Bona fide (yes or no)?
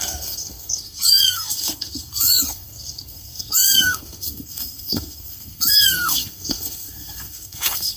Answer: no